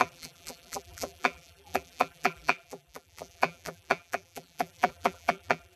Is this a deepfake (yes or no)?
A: yes